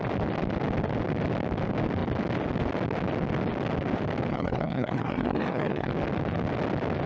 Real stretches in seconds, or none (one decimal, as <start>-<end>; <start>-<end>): 0.0-4.3; 5.9-7.1